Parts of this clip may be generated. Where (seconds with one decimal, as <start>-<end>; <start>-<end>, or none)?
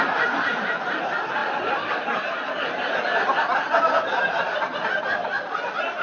none